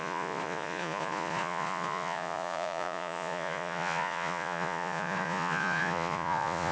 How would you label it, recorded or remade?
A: remade